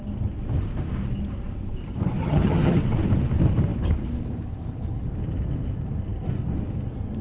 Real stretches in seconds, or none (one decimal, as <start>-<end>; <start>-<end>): 0.0-2.2; 2.8-7.2